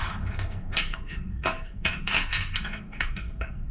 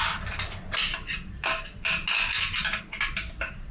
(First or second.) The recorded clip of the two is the second